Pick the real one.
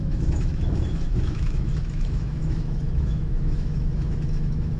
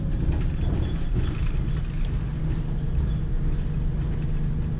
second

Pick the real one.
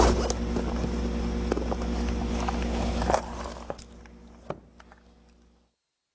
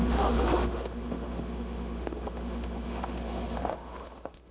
first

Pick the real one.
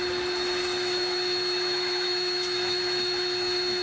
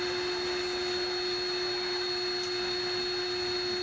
second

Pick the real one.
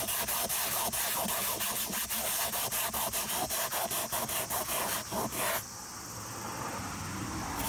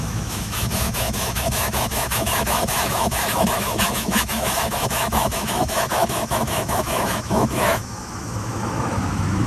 first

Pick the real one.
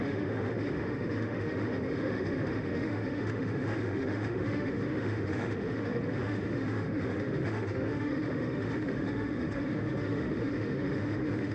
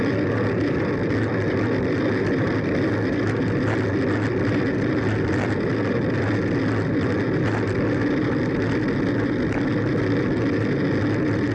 second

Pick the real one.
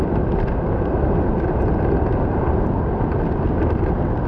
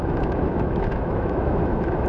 first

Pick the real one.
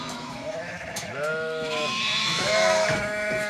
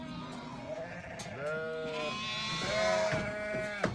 second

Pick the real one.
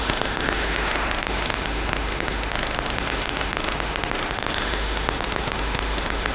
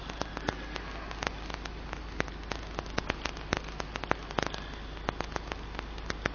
second